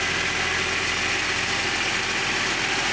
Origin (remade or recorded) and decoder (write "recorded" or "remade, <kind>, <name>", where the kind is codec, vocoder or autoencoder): recorded